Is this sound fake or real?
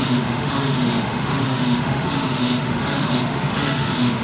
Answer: fake